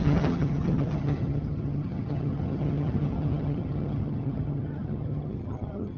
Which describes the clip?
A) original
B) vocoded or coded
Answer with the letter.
B